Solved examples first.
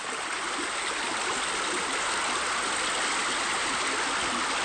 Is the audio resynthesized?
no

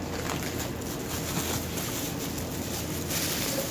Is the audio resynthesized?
no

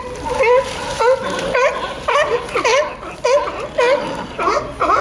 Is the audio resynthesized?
no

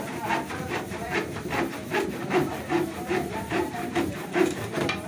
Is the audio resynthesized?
yes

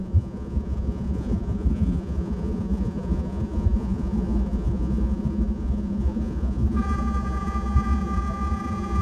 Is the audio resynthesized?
yes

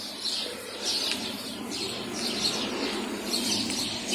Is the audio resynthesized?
no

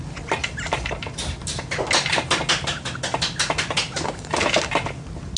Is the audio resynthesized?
no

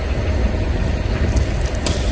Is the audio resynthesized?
no